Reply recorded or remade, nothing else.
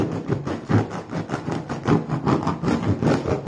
recorded